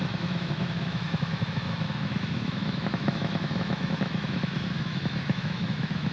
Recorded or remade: remade